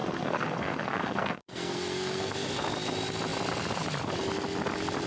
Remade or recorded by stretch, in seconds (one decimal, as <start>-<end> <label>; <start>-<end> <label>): 0.0-2.3 remade; 2.3-5.1 recorded